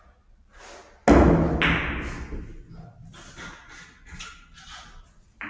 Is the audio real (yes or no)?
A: yes